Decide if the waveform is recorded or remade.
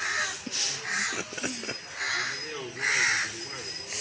recorded